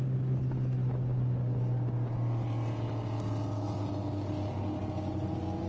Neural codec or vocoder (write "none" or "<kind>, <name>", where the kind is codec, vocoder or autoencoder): none